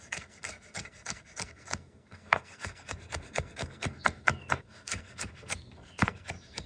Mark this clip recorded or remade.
remade